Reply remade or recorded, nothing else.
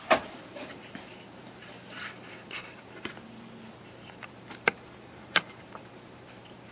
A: remade